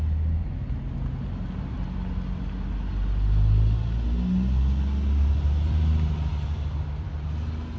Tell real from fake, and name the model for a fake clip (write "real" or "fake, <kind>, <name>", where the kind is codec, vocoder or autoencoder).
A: real